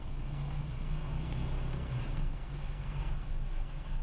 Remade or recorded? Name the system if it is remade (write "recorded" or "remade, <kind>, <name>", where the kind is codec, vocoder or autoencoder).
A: remade, codec, SNAC